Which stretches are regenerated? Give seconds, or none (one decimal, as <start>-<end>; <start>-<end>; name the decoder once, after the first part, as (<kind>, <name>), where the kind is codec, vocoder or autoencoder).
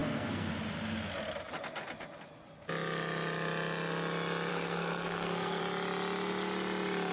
0.0-0.5 (codec, SNAC); 4.5-5.6